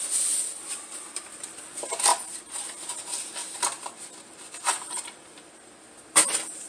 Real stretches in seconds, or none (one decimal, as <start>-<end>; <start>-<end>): 0.0-6.7